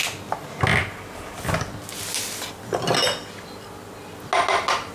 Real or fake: real